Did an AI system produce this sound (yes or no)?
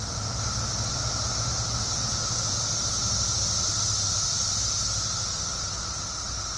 no